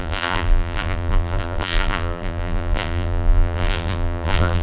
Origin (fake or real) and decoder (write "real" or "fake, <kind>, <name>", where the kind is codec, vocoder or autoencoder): fake, vocoder, BigVGAN v2